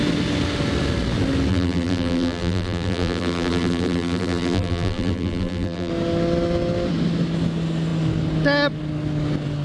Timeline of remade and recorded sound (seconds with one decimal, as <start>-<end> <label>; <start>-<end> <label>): 0.0-1.5 recorded; 1.5-5.9 remade; 5.9-9.6 recorded